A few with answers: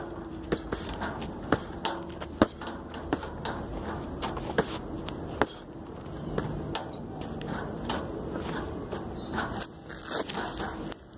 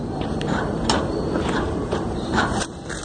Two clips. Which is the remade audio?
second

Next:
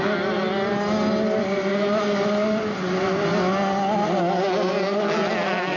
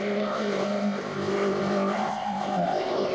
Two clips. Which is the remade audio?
second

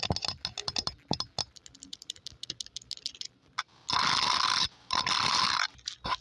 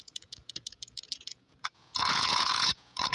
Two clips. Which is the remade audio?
second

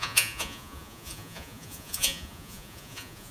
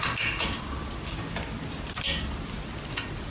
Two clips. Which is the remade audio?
first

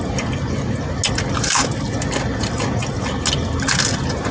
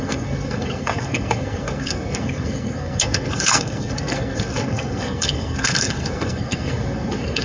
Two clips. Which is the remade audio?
second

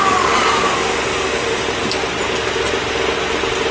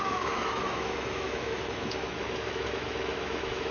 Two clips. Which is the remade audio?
second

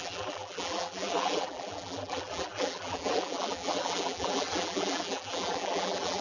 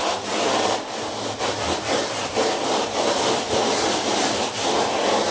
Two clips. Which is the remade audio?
first